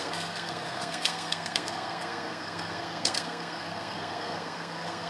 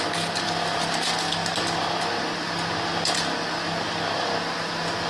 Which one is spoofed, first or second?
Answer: first